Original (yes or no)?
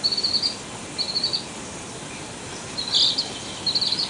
yes